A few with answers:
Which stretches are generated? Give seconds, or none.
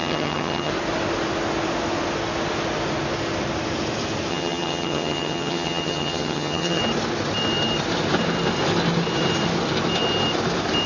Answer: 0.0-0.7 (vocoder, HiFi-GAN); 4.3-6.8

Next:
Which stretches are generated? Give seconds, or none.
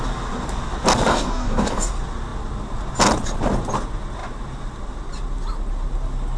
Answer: 1.1-1.9 (codec, DAC)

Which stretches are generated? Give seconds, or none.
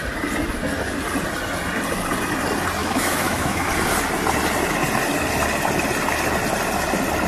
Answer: 2.8-3.7 (autoencoder, DAC-VAE)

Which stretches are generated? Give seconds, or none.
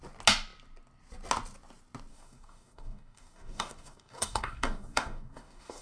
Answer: 2.1-5.8 (codec, DAC)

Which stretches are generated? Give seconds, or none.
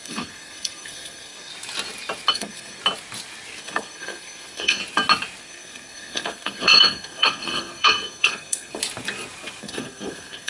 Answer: 0.0-1.5 (codec, SNAC); 2.3-2.8; 3.6-4.8; 5.4-8.8; 9.6-10.5